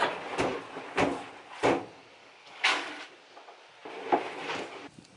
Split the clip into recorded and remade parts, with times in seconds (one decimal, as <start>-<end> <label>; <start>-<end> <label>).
0.0-2.2 recorded; 2.2-2.9 remade; 2.9-5.2 recorded